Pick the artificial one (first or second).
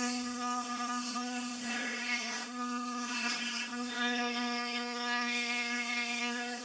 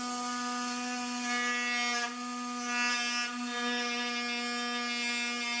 first